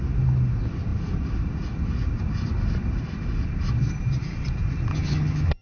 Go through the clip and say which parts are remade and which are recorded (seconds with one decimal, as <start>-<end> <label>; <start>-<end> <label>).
0.0-4.9 recorded; 4.9-5.6 remade